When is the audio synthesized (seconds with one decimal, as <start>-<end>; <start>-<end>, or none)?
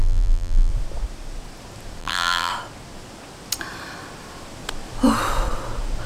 0.0-0.7; 2.0-2.5